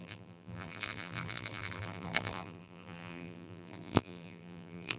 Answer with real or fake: fake